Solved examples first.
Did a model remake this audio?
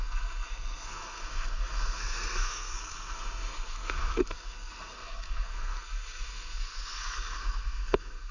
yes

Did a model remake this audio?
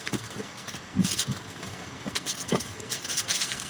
yes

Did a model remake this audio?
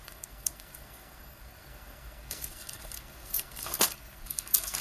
yes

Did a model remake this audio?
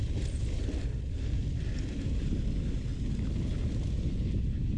no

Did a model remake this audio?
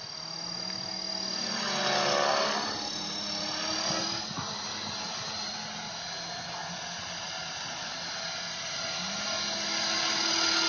no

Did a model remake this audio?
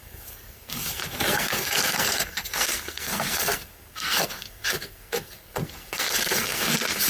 yes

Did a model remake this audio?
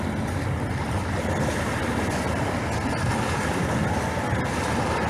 no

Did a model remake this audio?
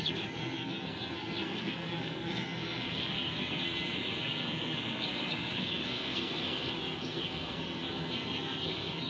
yes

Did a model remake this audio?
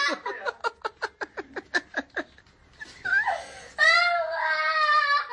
no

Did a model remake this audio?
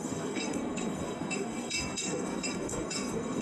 yes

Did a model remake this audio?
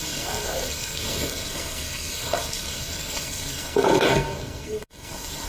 yes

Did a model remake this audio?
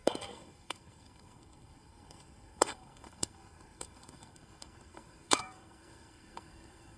yes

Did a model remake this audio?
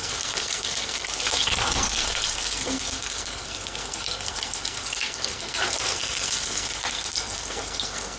yes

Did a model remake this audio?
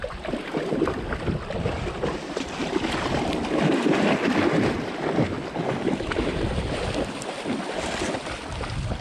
no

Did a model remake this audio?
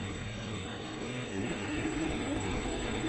yes